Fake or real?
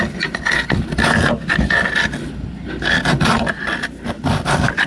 real